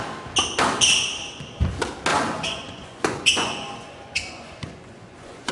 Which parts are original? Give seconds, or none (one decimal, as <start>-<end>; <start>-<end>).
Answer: 0.0-2.1